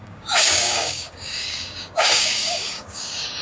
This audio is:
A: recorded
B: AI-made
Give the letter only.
B